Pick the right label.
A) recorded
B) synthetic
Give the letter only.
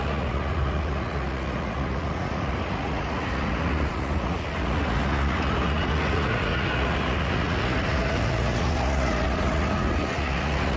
B